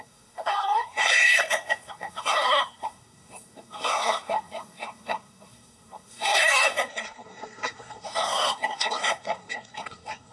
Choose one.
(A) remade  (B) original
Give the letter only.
A